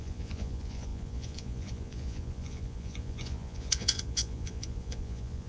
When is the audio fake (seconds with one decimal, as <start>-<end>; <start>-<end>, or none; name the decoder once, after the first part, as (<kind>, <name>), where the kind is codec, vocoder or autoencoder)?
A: 0.0-5.5 (vocoder, Vocos)

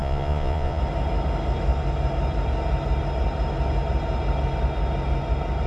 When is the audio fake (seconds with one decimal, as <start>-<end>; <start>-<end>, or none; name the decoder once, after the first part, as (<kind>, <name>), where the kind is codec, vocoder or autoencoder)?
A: 0.0-0.8 (vocoder, Vocos)

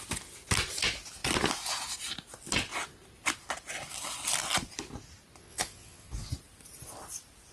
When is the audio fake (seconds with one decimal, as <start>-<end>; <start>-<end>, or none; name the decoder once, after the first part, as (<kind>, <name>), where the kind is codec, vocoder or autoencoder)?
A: 5.4-6.3 (vocoder, Vocos)

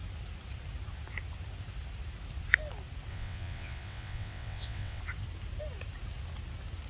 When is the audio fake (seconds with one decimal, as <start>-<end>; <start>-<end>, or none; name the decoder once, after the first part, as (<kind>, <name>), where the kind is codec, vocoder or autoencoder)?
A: 3.1-5.0 (vocoder, WaveNeXt)

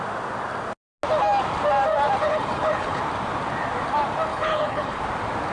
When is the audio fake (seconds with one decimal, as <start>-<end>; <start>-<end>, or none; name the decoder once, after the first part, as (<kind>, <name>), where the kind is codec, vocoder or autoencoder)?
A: 2.2-3.0 (codec, HILCodec); 4.3-5.0